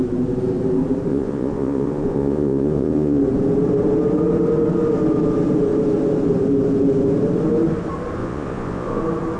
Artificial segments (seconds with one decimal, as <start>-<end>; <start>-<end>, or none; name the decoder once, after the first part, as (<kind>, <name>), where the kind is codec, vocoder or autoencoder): 1.1-3.2 (vocoder, Vocos); 8.2-9.0